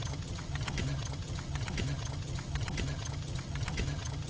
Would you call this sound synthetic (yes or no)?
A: yes